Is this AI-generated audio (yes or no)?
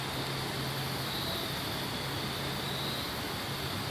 no